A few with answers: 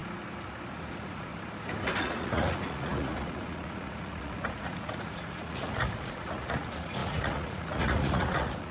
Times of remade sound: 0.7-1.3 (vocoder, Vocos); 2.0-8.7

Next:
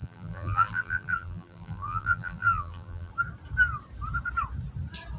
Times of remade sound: 0.0-3.1 (vocoder, BigVGAN v2)

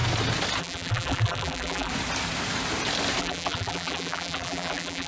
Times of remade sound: 0.6-1.9 (vocoder, BigVGAN v2); 3.2-5.1

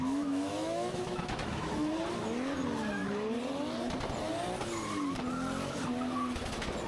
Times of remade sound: 0.0-1.9 (autoencoder, DAC-VAE)